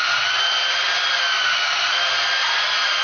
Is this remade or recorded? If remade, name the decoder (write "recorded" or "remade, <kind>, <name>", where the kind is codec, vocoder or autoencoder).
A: recorded